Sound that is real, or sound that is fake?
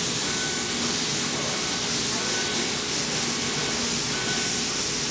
real